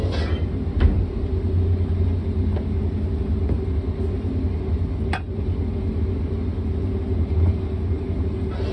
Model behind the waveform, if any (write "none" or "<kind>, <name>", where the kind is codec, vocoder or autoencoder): none